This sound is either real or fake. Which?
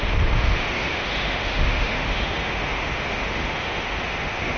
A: fake